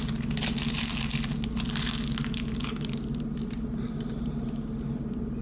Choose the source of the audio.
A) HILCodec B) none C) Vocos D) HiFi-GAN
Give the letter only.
B